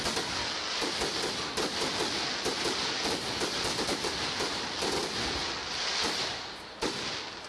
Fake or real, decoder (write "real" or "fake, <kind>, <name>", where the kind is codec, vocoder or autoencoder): real